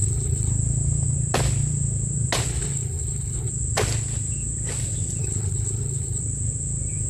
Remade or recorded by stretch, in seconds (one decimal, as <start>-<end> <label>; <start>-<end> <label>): 0.0-0.5 remade; 0.5-2.5 recorded; 2.5-3.5 remade; 3.5-5.2 recorded; 5.2-6.2 remade; 6.2-7.1 recorded